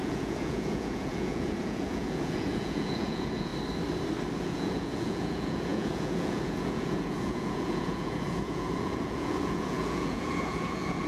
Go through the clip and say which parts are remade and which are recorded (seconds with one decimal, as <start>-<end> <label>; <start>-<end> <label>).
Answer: 0.0-3.5 remade; 3.5-4.4 recorded; 4.4-11.1 remade